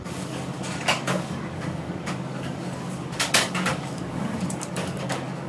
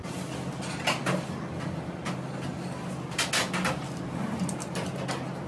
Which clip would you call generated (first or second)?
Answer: first